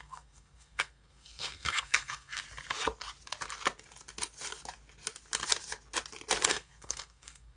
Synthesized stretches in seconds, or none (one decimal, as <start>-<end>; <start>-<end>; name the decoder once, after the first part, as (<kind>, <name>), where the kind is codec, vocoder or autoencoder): 0.0-2.4 (codec, SNAC); 6.5-7.6